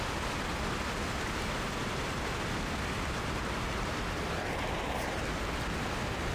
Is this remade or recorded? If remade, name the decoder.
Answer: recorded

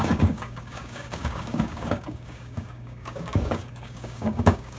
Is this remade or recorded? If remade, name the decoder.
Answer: remade, codec, DAC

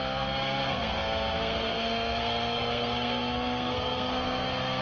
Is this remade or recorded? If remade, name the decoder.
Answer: remade, codec, SNAC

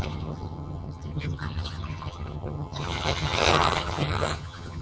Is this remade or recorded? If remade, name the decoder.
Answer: remade, vocoder, HiFi-GAN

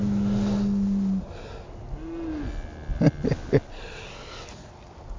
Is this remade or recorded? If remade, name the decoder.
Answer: recorded